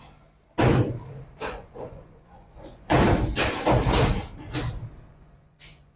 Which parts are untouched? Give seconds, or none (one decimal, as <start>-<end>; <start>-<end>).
0.0-1.4; 2.9-5.1